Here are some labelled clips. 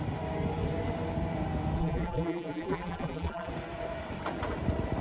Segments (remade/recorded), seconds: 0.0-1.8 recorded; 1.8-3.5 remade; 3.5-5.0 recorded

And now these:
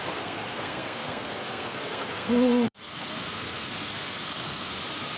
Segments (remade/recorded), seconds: 0.0-4.7 remade; 4.7-5.2 recorded

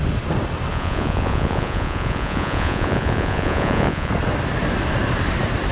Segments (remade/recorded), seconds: 0.0-0.7 recorded; 0.7-4.1 remade; 4.1-5.7 recorded

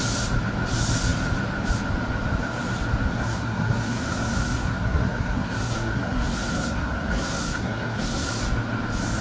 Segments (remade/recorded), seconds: 0.0-3.1 recorded; 3.1-8.3 remade; 8.3-9.2 recorded

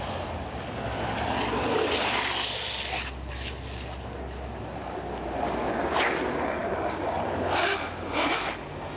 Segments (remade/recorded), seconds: 0.0-9.0 recorded

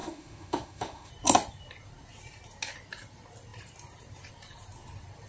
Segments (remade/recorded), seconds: 0.0-1.1 remade; 1.1-5.3 recorded

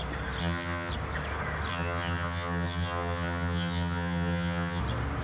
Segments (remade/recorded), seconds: 0.0-0.4 recorded; 0.4-0.9 remade; 0.9-1.7 recorded; 1.7-4.8 remade; 4.8-5.2 recorded